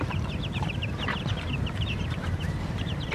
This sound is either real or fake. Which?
fake